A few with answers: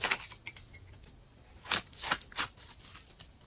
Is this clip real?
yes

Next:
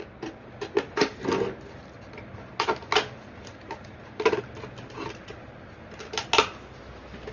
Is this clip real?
yes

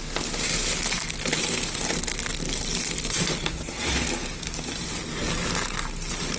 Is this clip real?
yes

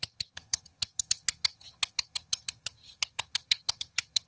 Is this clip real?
no